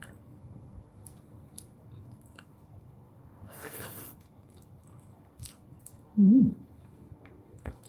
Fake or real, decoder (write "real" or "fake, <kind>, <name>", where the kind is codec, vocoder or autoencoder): fake, codec, SNAC